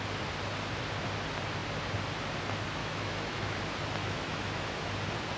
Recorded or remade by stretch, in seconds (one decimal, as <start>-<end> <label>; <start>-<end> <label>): 0.0-2.8 recorded; 2.8-3.6 remade; 3.6-4.0 recorded; 4.0-4.9 remade; 4.9-5.4 recorded